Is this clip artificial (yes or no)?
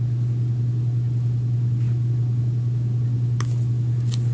no